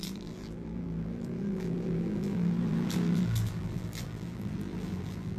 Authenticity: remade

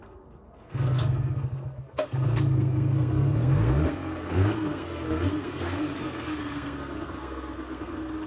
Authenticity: remade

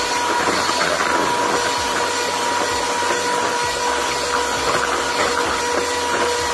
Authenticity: recorded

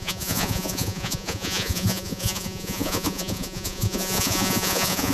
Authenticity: remade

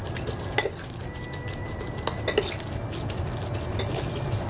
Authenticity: recorded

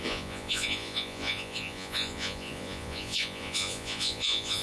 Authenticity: remade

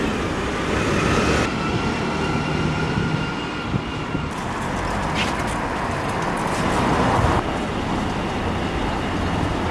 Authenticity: recorded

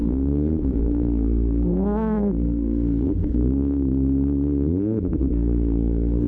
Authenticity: remade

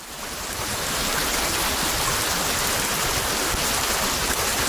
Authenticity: recorded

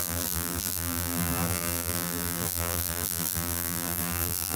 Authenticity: remade